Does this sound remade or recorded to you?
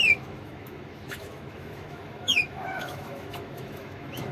remade